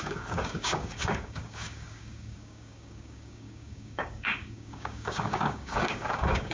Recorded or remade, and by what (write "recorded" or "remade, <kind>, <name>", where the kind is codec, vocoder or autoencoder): remade, codec, DAC